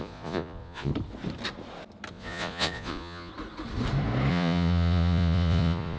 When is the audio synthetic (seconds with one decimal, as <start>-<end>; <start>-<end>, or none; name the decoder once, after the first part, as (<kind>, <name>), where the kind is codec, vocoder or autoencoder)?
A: 0.0-0.9 (vocoder, Vocos); 2.1-3.3; 4.3-6.0